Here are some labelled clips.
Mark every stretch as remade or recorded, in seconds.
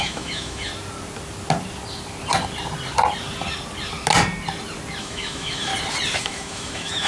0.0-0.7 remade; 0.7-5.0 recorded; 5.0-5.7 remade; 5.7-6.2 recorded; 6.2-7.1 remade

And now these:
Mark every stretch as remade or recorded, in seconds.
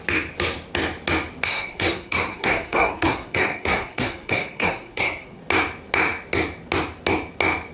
0.0-1.5 recorded; 1.5-5.4 remade; 5.4-7.7 recorded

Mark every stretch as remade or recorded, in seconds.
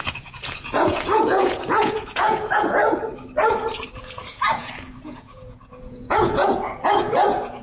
0.0-2.8 remade; 2.8-4.0 recorded; 4.0-7.6 remade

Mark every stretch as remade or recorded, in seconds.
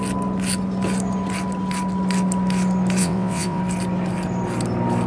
0.0-3.0 recorded; 3.0-3.6 remade; 3.6-5.1 recorded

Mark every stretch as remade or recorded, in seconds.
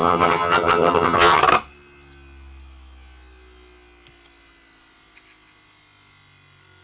0.0-1.4 remade; 1.4-6.8 recorded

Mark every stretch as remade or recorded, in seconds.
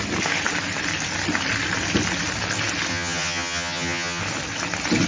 0.0-2.9 recorded; 2.9-4.2 remade; 4.2-5.1 recorded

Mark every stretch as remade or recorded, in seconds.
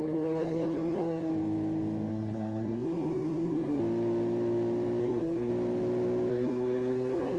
0.0-1.3 remade; 1.3-2.1 recorded; 2.1-3.8 remade; 3.8-5.0 recorded; 5.0-5.5 remade; 5.5-6.3 recorded; 6.3-7.4 remade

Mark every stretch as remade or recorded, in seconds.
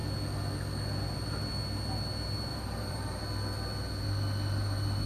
0.0-2.5 recorded; 2.5-3.2 remade; 3.2-5.1 recorded